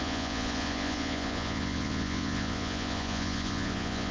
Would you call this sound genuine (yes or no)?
no